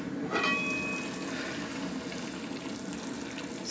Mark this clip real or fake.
real